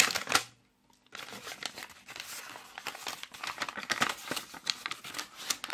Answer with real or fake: real